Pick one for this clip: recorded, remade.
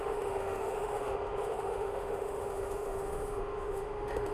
remade